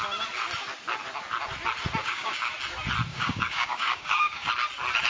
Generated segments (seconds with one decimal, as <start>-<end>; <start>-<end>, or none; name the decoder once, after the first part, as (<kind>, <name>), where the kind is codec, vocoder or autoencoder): 2.0-2.5 (codec, DAC); 3.1-4.5